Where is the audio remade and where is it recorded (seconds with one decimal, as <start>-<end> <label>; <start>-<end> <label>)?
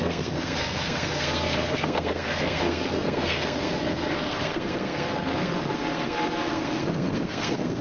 0.0-7.8 remade